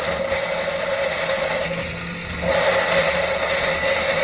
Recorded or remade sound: recorded